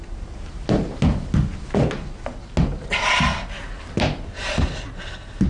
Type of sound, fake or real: real